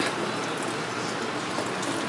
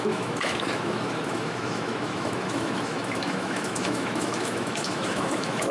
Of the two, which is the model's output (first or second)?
second